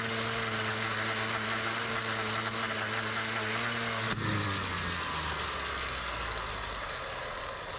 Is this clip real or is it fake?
real